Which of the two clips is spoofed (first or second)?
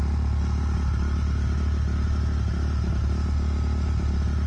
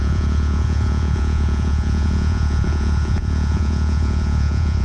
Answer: second